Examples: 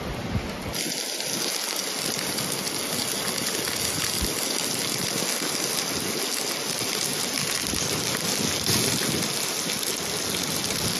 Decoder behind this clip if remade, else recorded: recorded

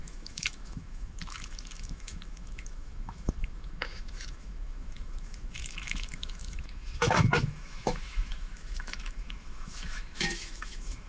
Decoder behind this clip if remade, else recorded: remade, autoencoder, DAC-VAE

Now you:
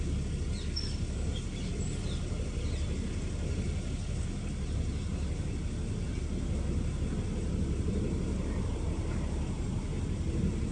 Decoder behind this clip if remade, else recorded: recorded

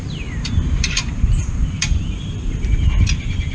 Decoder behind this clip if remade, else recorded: remade, vocoder, BigVGAN v2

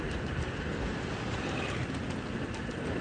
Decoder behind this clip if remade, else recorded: recorded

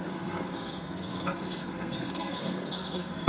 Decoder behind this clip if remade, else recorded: remade, codec, SNAC